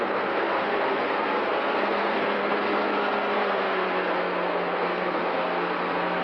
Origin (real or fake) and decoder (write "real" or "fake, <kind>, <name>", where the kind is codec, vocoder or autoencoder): fake, codec, SNAC